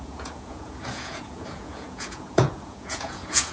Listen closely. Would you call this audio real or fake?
fake